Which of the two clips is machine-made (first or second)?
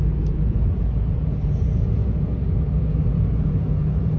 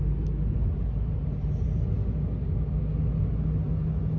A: first